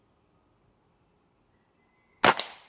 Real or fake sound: real